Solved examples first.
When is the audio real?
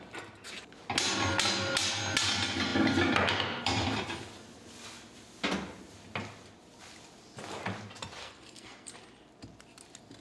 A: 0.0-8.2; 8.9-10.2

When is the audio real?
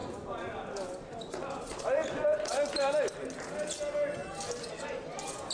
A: 0.0-5.5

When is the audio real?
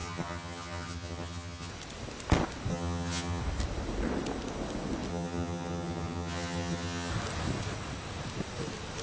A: 1.7-2.7; 3.4-5.1; 7.1-9.0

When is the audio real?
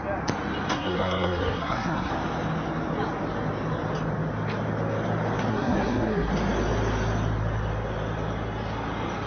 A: 0.0-0.7; 2.1-5.5; 6.3-9.3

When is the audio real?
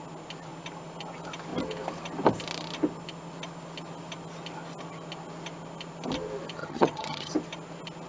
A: 0.0-6.6; 7.3-8.1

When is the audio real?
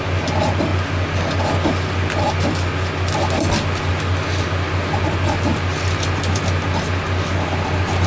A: 0.0-8.1